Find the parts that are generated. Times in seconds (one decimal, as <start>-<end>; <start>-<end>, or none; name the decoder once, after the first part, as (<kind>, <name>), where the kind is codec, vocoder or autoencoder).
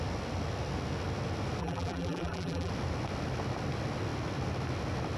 1.6-2.7 (vocoder, BigVGAN v2)